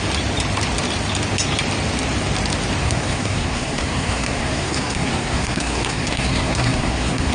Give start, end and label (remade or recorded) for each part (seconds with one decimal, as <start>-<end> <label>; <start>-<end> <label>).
0.0-2.8 recorded; 2.8-7.3 remade